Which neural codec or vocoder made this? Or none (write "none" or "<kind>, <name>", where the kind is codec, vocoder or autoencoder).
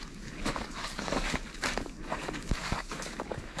codec, DAC